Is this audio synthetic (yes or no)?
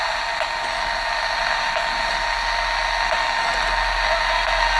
no